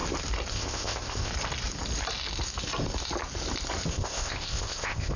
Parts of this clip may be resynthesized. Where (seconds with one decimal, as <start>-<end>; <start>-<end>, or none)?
0.5-1.3; 3.9-5.2